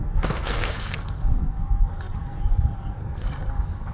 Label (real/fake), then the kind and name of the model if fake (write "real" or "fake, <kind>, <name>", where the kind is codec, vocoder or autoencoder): fake, codec, SNAC